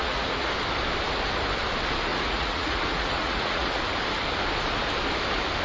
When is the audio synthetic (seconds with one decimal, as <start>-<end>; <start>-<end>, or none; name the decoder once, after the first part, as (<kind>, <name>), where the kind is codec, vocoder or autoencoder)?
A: 0.0-0.5 (vocoder, Vocos); 2.1-3.8